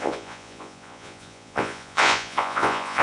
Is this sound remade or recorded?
remade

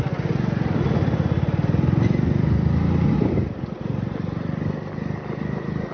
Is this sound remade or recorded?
recorded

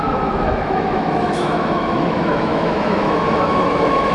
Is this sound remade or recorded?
remade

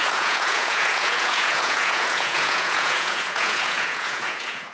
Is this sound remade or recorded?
remade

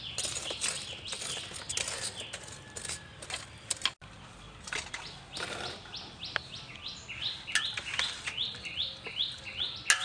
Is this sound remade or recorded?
recorded